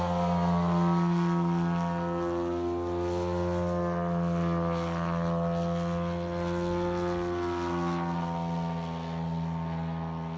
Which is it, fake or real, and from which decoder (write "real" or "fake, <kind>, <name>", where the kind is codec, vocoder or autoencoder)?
real